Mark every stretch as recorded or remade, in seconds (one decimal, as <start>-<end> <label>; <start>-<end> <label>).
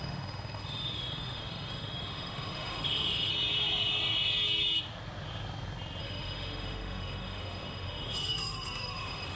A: 0.0-3.3 remade; 3.3-6.0 recorded; 6.0-9.4 remade